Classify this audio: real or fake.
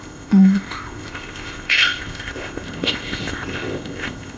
fake